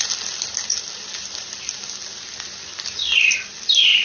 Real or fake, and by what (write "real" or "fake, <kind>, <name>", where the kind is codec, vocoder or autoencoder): real